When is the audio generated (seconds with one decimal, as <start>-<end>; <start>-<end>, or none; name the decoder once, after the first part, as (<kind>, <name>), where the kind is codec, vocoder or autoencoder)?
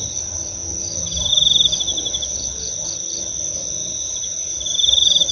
3.8-5.3 (vocoder, BigVGAN v2)